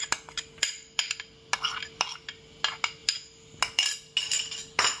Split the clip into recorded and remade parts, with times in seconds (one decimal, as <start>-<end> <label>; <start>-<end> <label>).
0.0-5.0 recorded

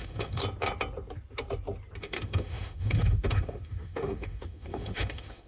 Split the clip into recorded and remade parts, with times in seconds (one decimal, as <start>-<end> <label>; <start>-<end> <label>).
0.0-0.4 remade; 0.4-2.0 recorded; 2.0-5.5 remade

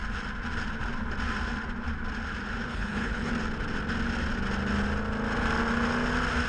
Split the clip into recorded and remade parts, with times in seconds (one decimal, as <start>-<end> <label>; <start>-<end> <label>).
0.0-2.7 recorded; 2.7-3.3 remade; 3.3-6.5 recorded